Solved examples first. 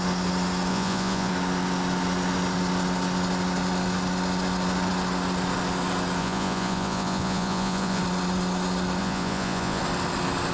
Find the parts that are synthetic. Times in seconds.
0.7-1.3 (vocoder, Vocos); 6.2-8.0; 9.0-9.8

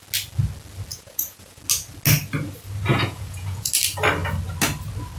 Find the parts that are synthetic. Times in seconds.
0.9-1.6 (vocoder, Vocos); 2.9-3.7

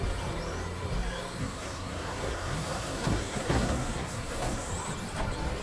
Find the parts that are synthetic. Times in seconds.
1.4-4.7 (codec, SNAC)

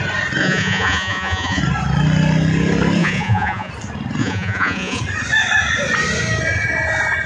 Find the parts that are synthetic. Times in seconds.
0.4-1.6 (vocoder, Vocos); 3.0-3.7; 4.2-5.0

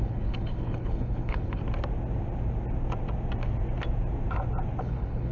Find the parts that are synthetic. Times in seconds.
0.0-1.6 (codec, HILCodec); 4.8-5.3

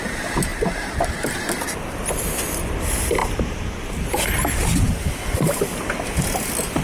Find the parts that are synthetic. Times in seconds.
0.5-1.4 (vocoder, BigVGAN v2); 3.2-4.6